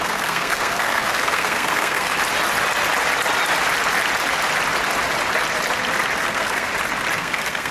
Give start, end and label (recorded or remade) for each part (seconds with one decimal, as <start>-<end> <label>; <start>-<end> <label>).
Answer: 0.0-2.2 remade; 2.2-6.2 recorded; 6.2-6.7 remade; 6.7-7.2 recorded; 7.2-7.7 remade